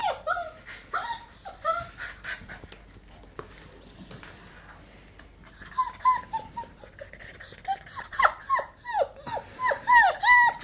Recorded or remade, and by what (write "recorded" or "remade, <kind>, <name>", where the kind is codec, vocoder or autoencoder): recorded